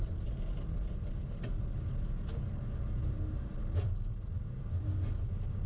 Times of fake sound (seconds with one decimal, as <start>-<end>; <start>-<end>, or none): none